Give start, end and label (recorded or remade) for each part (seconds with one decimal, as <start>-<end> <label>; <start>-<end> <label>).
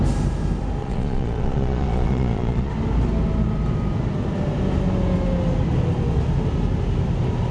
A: 0.0-0.8 recorded; 0.8-2.7 remade; 2.7-7.5 recorded